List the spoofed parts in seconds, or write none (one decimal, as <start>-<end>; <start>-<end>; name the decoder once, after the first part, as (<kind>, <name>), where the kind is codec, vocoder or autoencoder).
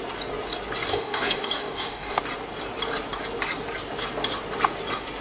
0.9-2.2 (codec, DAC)